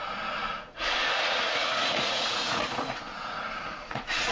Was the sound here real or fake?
fake